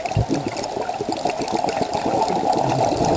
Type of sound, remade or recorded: recorded